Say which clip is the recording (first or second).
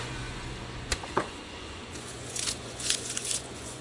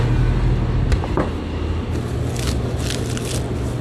second